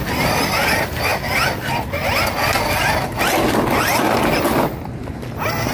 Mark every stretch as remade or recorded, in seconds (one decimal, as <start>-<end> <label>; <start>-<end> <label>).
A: 0.0-5.7 recorded